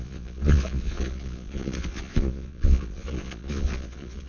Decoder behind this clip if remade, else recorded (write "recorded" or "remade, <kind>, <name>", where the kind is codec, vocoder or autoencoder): remade, vocoder, Vocos